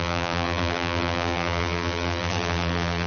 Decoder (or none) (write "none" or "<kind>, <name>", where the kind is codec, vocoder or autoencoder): vocoder, BigVGAN v2